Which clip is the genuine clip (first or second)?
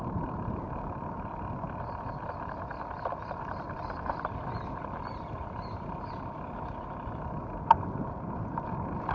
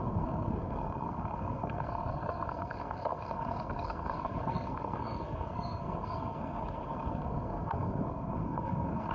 first